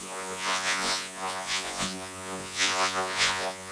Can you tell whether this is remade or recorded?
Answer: remade